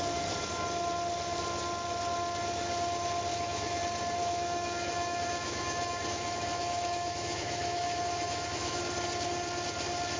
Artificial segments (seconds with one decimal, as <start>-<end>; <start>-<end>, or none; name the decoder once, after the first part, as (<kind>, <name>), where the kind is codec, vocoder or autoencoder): 3.3-3.8 (autoencoder, DAC-VAE); 4.2-8.8